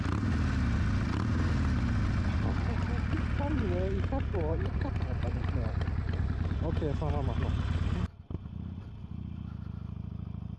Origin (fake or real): real